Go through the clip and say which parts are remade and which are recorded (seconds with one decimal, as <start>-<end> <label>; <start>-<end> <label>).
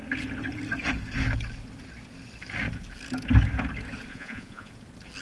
0.0-4.1 recorded; 4.1-4.7 remade; 4.7-5.2 recorded